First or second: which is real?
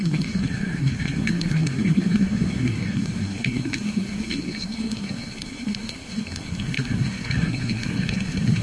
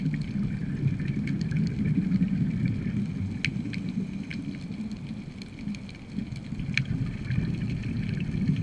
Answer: second